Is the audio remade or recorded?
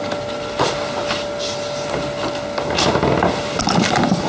recorded